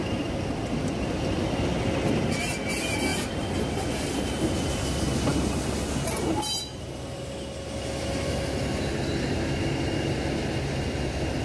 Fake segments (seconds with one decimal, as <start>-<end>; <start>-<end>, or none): none